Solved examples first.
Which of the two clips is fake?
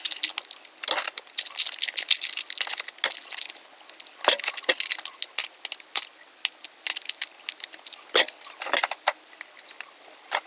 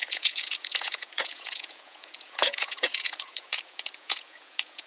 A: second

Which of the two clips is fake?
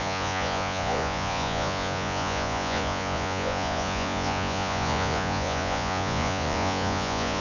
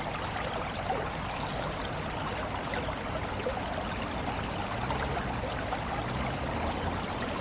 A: first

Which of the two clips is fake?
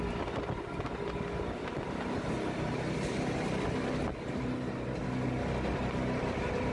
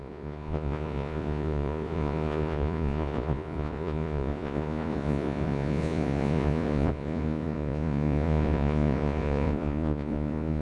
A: second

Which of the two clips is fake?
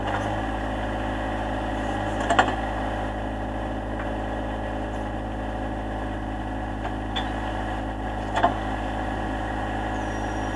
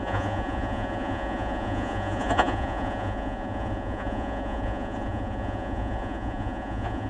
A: second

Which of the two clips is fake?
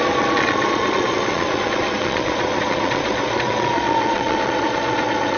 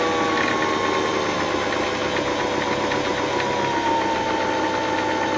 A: first